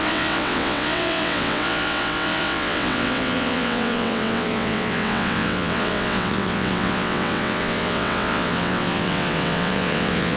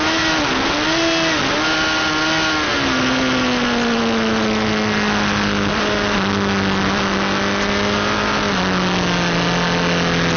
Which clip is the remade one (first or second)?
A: first